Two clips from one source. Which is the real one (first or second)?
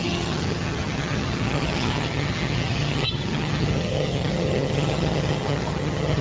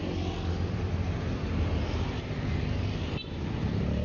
second